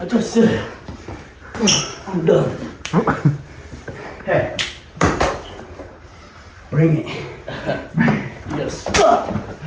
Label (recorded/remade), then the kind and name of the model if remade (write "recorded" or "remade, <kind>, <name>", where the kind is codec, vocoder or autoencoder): remade, vocoder, BigVGAN v2